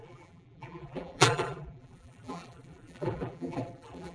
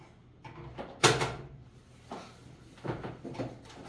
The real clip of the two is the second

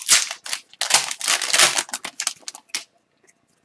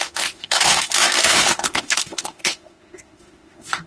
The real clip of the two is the first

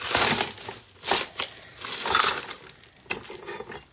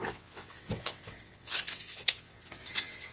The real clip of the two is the first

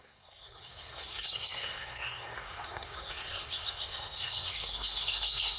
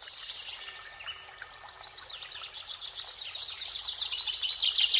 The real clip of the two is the second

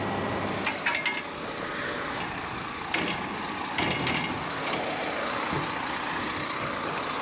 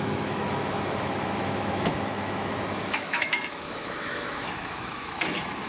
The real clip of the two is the first